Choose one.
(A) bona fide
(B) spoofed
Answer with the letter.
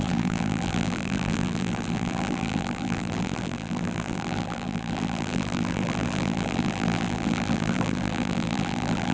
B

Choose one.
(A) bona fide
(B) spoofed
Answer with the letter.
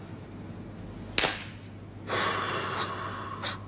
A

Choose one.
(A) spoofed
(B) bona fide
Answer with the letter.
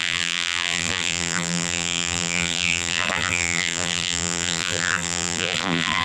A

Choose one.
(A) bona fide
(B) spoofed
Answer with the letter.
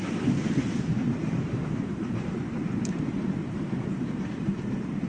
B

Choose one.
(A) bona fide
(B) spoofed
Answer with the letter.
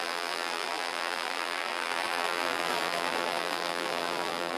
B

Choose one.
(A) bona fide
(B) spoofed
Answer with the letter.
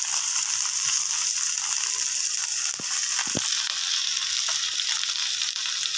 A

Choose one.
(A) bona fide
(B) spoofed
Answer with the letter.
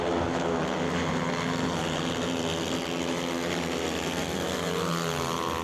A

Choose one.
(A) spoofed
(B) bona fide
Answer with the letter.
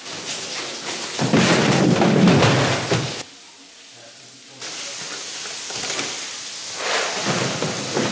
B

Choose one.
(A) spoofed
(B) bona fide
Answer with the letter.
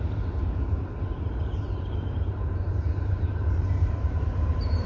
A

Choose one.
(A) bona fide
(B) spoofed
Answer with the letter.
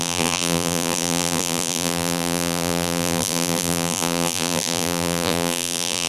B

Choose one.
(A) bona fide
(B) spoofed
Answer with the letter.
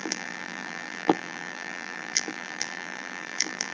B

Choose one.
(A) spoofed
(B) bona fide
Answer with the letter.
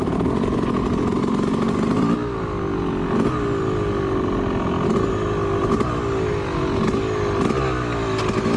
B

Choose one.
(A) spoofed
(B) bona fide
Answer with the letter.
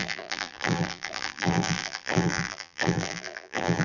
A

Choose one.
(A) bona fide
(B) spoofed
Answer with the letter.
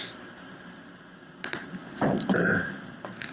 B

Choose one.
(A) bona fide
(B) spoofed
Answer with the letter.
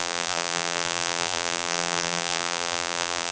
B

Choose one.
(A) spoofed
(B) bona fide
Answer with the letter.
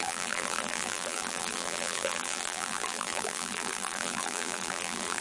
A